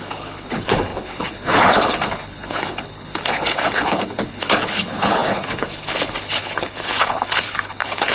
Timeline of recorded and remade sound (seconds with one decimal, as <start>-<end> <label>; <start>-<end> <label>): 0.0-8.1 remade